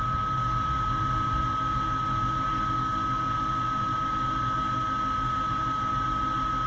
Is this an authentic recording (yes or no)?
yes